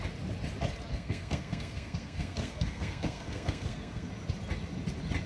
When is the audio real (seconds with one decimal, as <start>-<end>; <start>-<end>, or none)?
0.0-0.9; 4.1-5.3